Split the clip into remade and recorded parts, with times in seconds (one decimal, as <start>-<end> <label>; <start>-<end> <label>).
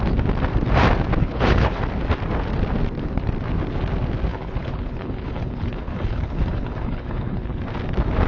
0.0-1.2 recorded; 1.2-1.8 remade; 1.8-4.3 recorded; 4.3-7.6 remade; 7.6-8.3 recorded